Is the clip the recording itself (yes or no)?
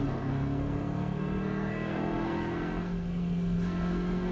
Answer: no